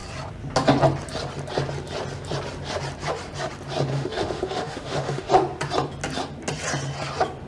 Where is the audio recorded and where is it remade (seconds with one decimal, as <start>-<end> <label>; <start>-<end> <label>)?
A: 0.0-3.9 recorded; 3.9-5.3 remade; 5.3-7.5 recorded